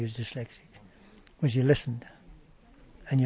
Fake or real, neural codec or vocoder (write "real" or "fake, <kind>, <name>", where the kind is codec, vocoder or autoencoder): real